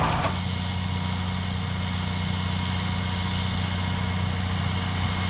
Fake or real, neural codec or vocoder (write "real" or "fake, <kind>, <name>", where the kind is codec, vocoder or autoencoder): real